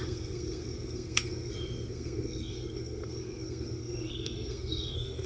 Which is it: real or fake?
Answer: fake